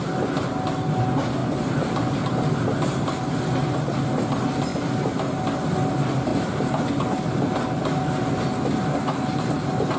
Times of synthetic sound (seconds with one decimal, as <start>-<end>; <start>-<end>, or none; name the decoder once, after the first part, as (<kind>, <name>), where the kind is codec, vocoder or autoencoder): 4.7-5.4 (vocoder, BigVGAN v2); 6.3-6.8